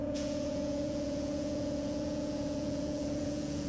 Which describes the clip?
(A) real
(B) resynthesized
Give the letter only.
B